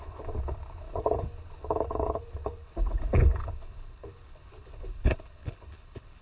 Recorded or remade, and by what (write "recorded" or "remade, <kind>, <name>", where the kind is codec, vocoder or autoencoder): remade, codec, HILCodec